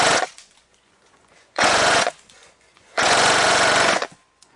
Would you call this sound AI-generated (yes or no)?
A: yes